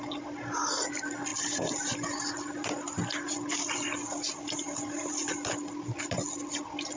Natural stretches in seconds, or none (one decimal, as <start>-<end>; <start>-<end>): 0.0-7.0